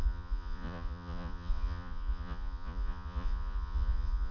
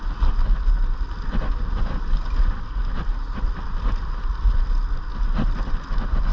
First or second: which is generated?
first